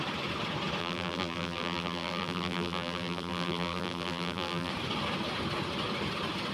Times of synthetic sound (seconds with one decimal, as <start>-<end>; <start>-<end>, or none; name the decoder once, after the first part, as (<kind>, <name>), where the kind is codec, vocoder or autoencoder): 0.8-4.7 (vocoder, BigVGAN v2)